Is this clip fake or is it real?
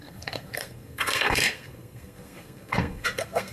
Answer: fake